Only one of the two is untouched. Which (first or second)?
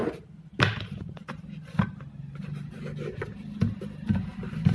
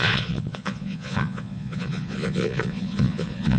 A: first